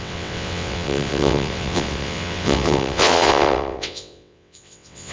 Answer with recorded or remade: remade